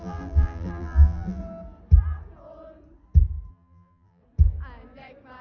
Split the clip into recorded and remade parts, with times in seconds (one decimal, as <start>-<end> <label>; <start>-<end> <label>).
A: 0.0-1.4 remade; 1.4-3.5 recorded; 3.5-4.2 remade; 4.2-5.4 recorded